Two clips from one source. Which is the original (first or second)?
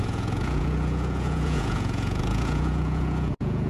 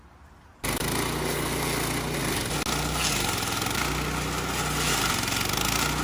second